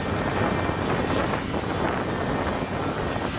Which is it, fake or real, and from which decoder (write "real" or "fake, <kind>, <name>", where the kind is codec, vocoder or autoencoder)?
real